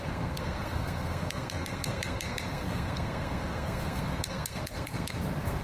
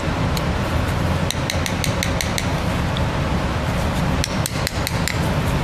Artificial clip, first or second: first